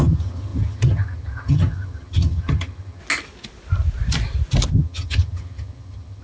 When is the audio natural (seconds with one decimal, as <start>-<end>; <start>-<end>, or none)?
3.0-4.7